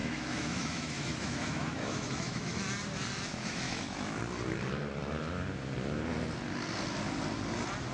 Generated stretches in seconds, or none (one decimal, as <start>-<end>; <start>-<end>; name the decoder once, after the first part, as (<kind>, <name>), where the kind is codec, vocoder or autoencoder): 0.0-2.6 (autoencoder, DAC-VAE); 3.3-4.2

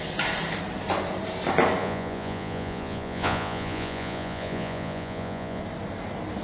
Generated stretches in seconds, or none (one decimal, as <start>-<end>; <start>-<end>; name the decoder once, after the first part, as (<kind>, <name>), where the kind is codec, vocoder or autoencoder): 1.8-5.6 (vocoder, Vocos)

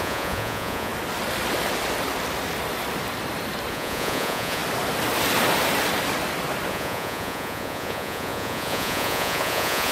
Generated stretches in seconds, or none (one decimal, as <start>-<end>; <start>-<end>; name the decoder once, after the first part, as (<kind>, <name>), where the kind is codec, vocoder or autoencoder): 0.0-0.9 (vocoder, Vocos); 3.7-4.6; 6.7-9.9

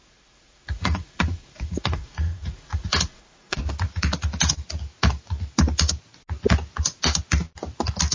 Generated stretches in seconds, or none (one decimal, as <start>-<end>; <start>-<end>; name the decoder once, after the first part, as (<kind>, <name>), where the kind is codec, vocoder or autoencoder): 0.0-3.6 (vocoder, Vocos)